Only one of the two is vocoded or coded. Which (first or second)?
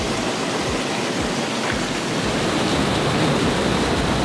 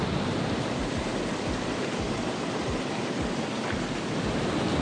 second